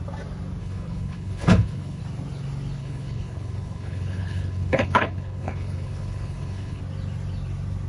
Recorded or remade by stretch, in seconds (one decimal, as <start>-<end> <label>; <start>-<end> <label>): 0.0-0.6 recorded; 0.6-2.0 remade; 2.0-2.8 recorded; 2.8-6.8 remade; 6.8-7.9 recorded